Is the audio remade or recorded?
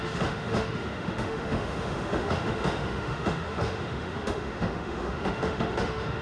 remade